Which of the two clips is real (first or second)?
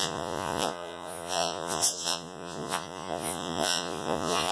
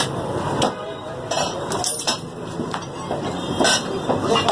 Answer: second